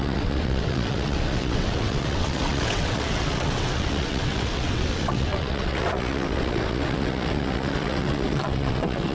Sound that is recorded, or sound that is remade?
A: remade